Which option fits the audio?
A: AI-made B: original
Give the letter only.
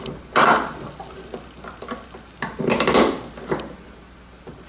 B